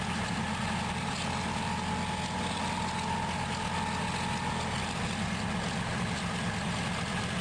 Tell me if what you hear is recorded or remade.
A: recorded